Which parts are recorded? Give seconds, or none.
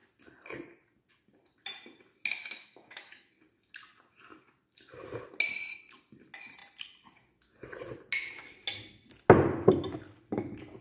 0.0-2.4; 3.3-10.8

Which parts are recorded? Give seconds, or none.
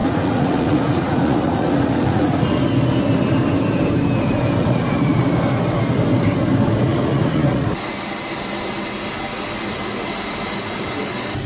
2.6-4.6; 5.2-6.9; 7.7-11.5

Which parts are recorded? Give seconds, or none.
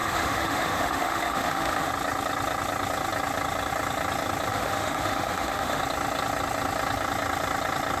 1.9-4.5; 5.8-8.0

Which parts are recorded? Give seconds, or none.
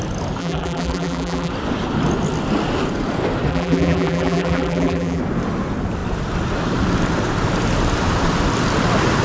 0.0-0.4; 1.5-3.5; 5.2-9.2